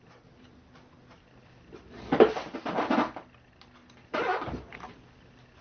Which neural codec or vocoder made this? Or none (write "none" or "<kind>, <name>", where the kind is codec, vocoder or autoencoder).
none